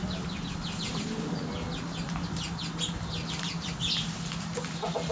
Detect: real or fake real